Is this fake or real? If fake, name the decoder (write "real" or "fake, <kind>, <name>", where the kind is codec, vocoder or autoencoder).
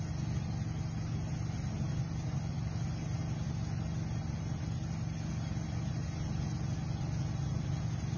real